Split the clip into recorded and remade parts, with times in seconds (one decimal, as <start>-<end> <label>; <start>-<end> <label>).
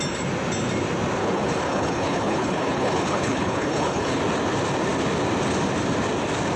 0.0-1.2 recorded; 1.2-4.2 remade; 4.2-6.6 recorded